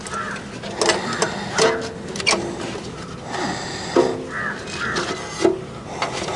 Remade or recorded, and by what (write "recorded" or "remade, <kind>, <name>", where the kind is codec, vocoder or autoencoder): recorded